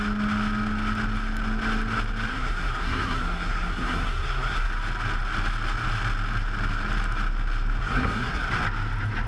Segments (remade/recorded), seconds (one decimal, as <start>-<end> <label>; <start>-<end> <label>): 0.0-2.3 recorded; 2.3-4.7 remade; 4.7-7.8 recorded; 7.8-8.5 remade; 8.5-9.3 recorded

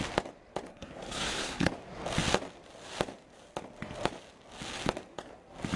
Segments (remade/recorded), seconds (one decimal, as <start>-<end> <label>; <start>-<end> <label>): 0.0-0.7 recorded; 0.7-1.7 remade; 1.7-5.8 recorded

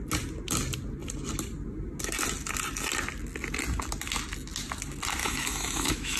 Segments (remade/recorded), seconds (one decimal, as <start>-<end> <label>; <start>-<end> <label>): 0.0-5.2 recorded; 5.2-6.2 remade

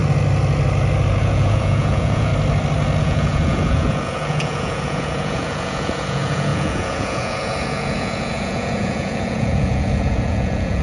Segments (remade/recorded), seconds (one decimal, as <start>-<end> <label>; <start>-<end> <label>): 0.0-1.2 recorded; 1.2-2.3 remade; 2.3-3.0 recorded; 3.0-10.8 remade

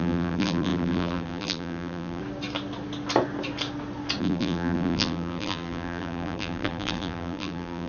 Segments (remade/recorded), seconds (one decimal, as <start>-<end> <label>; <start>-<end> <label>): 0.0-2.2 remade; 2.2-4.2 recorded; 4.2-7.9 remade